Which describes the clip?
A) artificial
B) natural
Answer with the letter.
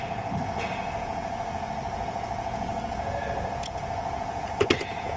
A